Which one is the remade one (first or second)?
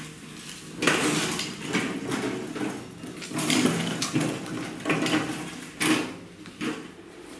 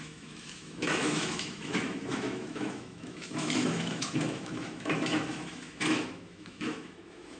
second